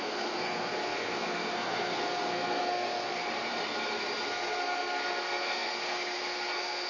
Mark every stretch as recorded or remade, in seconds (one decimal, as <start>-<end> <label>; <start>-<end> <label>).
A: 0.0-3.2 remade; 3.2-4.2 recorded; 4.2-6.9 remade